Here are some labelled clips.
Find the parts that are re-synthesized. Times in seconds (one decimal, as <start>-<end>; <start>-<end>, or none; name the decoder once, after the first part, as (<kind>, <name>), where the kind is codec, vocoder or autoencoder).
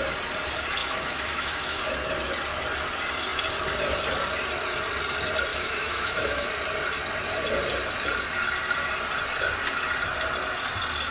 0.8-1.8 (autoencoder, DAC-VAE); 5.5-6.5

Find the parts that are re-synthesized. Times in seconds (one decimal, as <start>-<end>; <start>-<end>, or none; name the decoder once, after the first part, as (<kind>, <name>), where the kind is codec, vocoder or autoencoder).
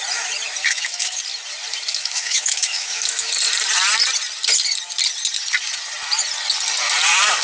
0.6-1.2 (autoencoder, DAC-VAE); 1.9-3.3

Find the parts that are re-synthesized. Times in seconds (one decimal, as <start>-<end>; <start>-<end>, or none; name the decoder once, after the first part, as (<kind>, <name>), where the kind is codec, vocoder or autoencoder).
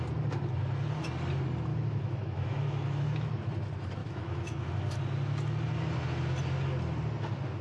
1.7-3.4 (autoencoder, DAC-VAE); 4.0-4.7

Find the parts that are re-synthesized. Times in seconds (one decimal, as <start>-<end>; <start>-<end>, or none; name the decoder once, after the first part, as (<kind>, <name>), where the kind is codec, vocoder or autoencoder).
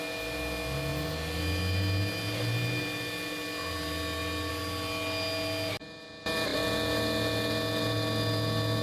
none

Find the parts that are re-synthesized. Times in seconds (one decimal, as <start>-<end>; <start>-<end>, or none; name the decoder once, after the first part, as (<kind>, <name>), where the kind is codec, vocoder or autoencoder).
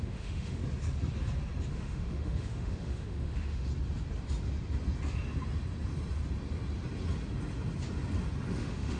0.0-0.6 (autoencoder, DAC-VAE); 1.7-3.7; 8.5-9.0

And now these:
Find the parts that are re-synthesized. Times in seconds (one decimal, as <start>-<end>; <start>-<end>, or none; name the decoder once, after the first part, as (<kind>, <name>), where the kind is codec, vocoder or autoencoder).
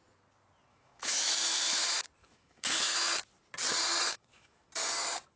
0.7-1.8 (autoencoder, DAC-VAE); 2.2-3.0; 4.1-4.7